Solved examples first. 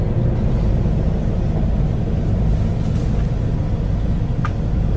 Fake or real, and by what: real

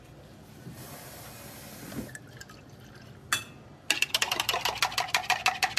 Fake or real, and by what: real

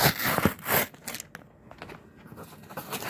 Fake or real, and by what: real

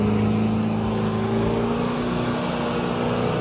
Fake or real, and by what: real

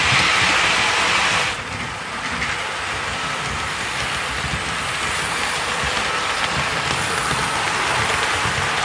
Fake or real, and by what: real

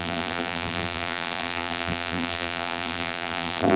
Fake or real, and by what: fake, vocoder, BigVGAN v2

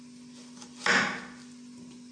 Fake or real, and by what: real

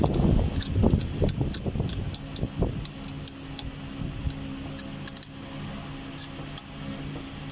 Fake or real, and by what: real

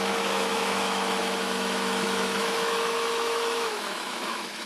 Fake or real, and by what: fake, autoencoder, DAC-VAE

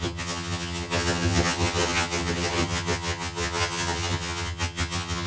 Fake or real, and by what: fake, vocoder, HiFi-GAN